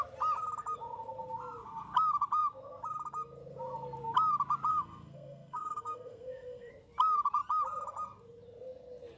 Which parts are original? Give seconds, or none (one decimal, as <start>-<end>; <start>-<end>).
0.0-4.7; 6.7-9.2